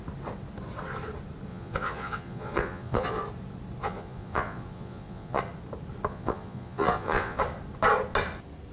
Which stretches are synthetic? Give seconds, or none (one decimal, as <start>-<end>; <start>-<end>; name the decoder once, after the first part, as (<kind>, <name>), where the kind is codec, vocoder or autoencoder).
1.5-3.2 (vocoder, Vocos); 3.8-5.4; 6.1-7.4